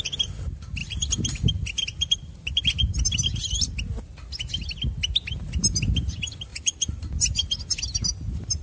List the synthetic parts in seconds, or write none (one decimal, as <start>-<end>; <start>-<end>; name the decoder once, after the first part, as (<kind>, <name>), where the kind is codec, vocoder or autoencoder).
0.8-2.9 (vocoder, BigVGAN v2); 6.5-7.8